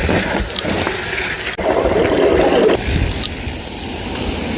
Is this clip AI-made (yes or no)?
no